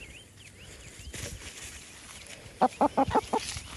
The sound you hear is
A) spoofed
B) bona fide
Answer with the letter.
B